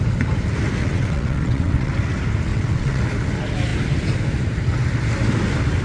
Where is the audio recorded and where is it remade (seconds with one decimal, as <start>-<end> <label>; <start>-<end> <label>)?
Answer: 0.0-0.8 recorded; 0.8-1.9 remade; 1.9-2.5 recorded; 2.5-3.0 remade; 3.0-5.8 recorded

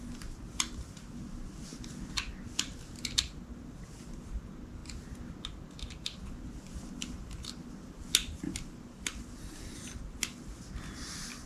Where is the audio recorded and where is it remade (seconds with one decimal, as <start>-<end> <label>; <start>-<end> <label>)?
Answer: 0.0-11.5 recorded

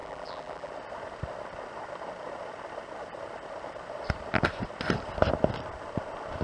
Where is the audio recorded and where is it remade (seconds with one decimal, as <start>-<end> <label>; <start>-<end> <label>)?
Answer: 0.0-0.7 remade; 0.7-6.4 recorded

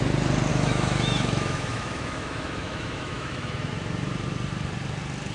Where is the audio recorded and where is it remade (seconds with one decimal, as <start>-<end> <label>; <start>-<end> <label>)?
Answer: 0.0-0.5 recorded; 0.5-3.7 remade; 3.7-5.3 recorded

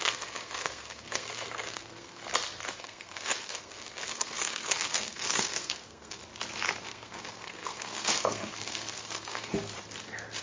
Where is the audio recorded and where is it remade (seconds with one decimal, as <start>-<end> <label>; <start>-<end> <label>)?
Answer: 0.0-2.2 remade; 2.2-2.8 recorded; 2.8-6.2 remade; 6.2-6.8 recorded; 6.8-9.5 remade; 9.5-10.4 recorded